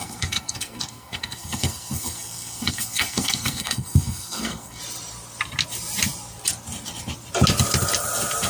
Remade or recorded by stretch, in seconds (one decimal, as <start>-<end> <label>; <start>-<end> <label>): 0.0-4.8 remade; 4.8-8.5 recorded